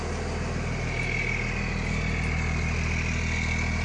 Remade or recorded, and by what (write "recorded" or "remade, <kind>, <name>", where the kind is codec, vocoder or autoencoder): recorded